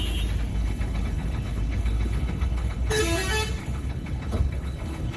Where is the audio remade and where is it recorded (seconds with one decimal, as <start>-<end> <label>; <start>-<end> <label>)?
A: 0.0-0.5 recorded; 0.5-3.0 remade; 3.0-3.6 recorded; 3.6-5.2 remade

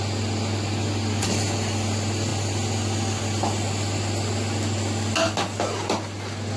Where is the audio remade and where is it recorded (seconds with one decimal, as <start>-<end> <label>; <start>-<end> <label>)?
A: 0.0-6.6 recorded